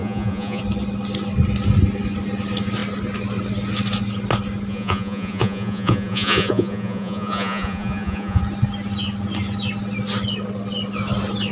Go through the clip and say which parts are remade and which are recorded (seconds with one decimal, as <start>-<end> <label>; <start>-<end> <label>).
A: 0.0-0.6 remade; 0.6-4.7 recorded; 4.7-8.4 remade; 8.4-11.5 recorded